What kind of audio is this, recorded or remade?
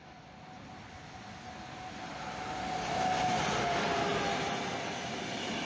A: recorded